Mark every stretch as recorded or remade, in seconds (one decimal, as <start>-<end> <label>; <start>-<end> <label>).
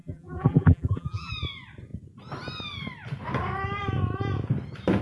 0.0-1.3 remade; 1.3-5.0 recorded